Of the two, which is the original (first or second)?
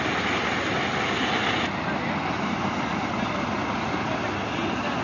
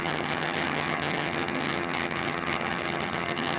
first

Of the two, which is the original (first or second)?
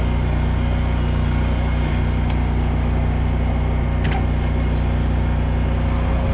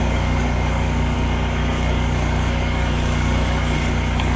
first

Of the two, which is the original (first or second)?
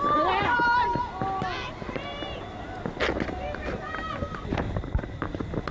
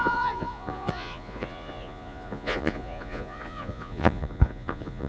first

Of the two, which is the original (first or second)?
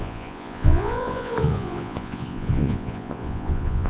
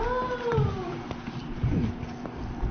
second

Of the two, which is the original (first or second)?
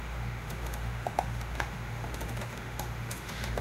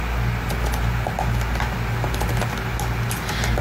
second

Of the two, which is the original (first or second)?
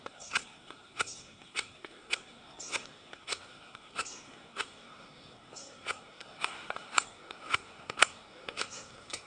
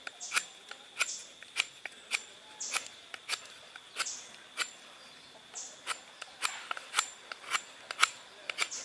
second